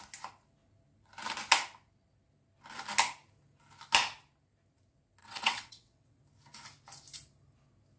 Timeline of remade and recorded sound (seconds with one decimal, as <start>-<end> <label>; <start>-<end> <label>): 0.0-5.2 recorded; 5.2-6.2 remade; 6.2-8.0 recorded

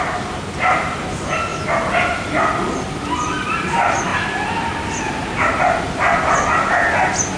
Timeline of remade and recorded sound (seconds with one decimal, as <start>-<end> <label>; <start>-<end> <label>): 0.0-7.4 recorded

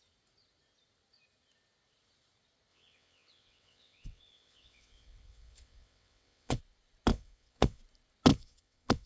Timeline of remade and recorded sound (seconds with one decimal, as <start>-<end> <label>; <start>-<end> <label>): 0.0-2.7 recorded; 2.7-6.6 remade; 6.6-7.1 recorded; 7.1-7.8 remade; 7.8-8.3 recorded; 8.3-9.1 remade

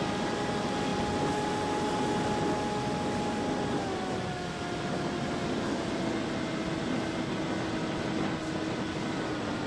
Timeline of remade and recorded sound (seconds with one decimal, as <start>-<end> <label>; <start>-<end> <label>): 0.0-9.7 recorded

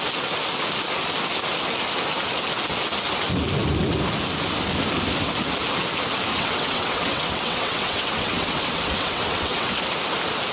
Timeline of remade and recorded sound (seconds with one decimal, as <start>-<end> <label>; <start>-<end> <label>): 0.0-6.3 recorded; 6.3-9.7 remade; 9.7-10.5 recorded

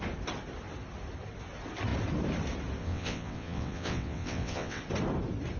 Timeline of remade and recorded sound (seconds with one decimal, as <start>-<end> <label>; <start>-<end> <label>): 0.0-2.8 recorded; 2.8-4.8 remade; 4.8-5.6 recorded